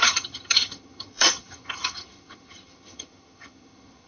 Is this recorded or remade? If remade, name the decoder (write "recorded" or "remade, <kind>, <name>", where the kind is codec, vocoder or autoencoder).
remade, vocoder, HiFi-GAN